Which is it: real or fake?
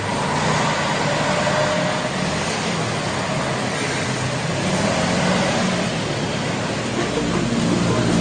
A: real